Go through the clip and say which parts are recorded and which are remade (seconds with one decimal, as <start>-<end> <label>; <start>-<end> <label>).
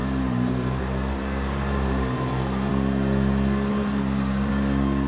0.0-2.7 remade; 2.7-3.7 recorded; 3.7-4.5 remade; 4.5-5.1 recorded